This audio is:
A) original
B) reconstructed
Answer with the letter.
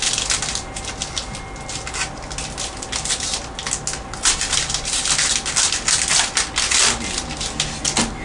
A